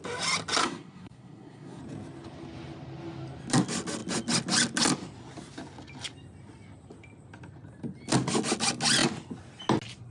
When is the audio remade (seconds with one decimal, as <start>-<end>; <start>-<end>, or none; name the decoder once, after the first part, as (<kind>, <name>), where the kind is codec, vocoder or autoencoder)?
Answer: 0.6-1.8 (codec, SNAC)